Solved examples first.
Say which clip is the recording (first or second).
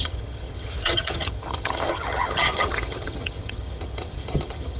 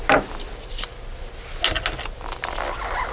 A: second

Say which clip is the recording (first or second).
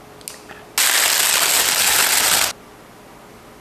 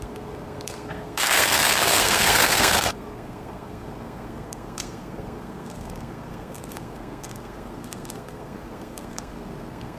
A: first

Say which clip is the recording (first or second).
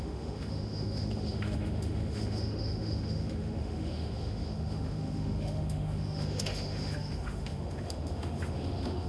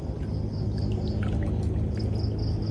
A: second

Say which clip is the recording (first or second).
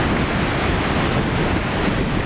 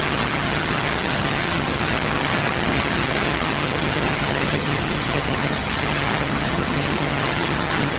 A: first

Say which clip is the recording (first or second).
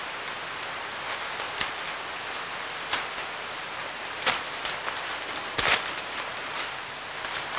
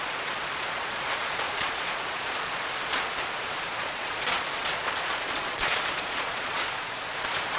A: first